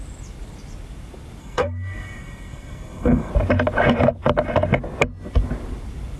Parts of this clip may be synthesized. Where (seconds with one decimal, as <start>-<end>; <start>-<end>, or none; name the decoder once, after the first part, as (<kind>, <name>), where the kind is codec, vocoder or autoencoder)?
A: 1.4-3.3 (codec, SNAC)